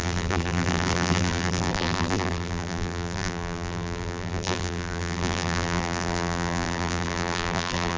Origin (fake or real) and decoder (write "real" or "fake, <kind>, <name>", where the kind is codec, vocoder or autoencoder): fake, vocoder, BigVGAN v2